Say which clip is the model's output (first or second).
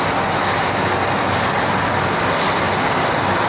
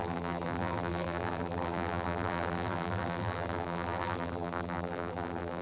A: second